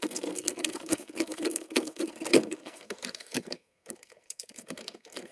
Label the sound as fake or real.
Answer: fake